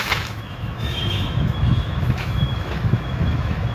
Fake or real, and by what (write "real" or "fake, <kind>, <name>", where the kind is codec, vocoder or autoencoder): fake, autoencoder, DAC-VAE